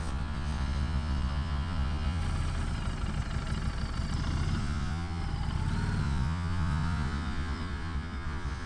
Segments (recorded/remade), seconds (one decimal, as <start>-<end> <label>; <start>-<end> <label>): 0.0-2.2 remade; 2.2-4.6 recorded; 4.6-5.2 remade; 5.2-6.0 recorded; 6.0-8.7 remade

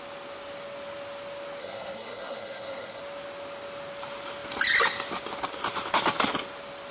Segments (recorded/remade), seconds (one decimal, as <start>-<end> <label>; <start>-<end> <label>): 0.0-1.6 recorded; 1.6-3.0 remade; 3.0-6.9 recorded

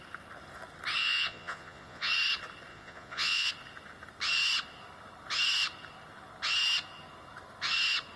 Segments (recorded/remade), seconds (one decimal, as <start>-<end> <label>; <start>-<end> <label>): 0.0-1.0 recorded; 1.0-2.1 remade; 2.1-2.7 recorded; 2.7-3.5 remade; 3.5-8.2 recorded

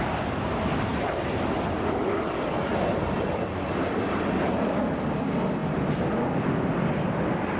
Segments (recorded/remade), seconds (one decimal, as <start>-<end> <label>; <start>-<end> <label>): 0.0-7.6 recorded

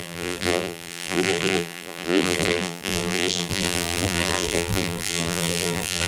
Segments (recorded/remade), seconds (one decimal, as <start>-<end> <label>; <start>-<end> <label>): 0.0-6.1 remade

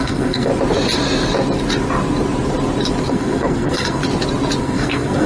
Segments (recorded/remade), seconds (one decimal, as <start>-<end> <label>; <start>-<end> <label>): 0.0-0.5 remade; 0.5-3.1 recorded; 3.1-4.0 remade; 4.0-4.6 recorded; 4.6-5.3 remade